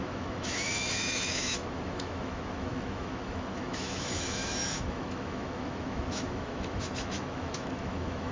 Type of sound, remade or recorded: remade